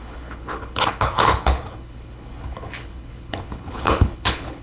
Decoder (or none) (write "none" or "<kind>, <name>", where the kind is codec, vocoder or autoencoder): codec, HILCodec